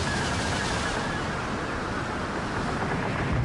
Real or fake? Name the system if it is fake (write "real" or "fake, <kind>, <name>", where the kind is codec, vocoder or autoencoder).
real